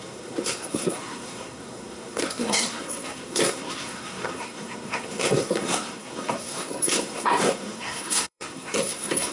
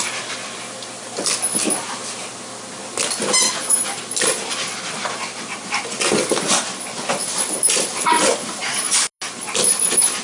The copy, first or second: first